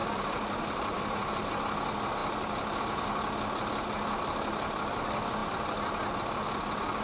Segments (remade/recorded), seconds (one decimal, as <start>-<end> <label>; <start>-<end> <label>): 0.0-1.5 remade; 1.5-7.0 recorded